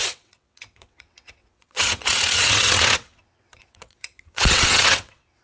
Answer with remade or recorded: remade